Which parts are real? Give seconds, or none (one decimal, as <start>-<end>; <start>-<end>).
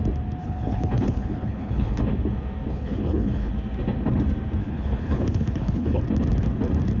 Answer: 0.0-0.4; 2.0-2.7; 3.5-4.6; 6.0-7.0